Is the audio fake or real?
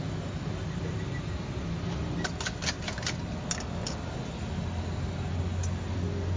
real